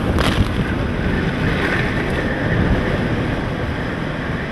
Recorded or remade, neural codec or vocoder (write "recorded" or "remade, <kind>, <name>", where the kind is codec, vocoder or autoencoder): recorded